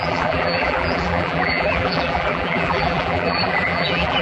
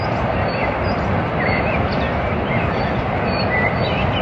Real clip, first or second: second